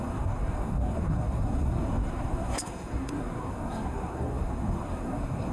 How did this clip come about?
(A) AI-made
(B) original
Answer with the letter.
A